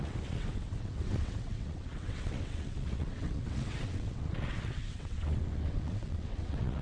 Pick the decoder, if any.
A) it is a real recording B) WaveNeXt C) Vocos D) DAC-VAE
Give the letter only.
B